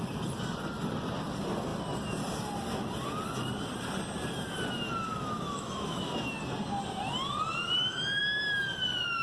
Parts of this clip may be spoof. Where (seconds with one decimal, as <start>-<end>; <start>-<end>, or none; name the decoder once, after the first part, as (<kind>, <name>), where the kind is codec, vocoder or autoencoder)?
5.1-6.0 (autoencoder, DAC-VAE); 7.6-8.2